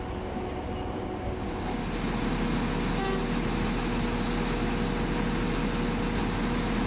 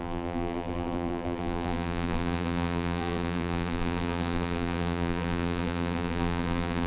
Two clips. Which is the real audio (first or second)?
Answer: first